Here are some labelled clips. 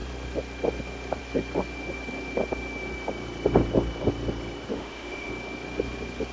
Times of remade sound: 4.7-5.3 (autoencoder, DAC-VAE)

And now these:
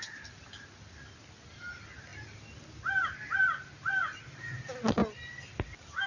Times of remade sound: none

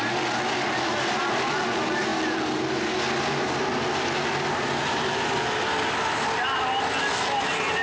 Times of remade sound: none